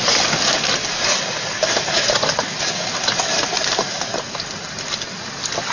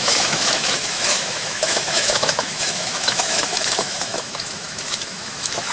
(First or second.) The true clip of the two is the first